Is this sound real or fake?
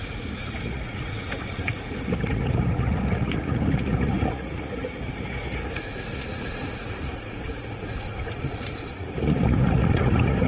fake